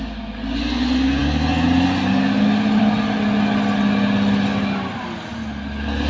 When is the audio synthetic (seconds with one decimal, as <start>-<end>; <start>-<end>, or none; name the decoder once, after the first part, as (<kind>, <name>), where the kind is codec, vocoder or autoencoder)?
none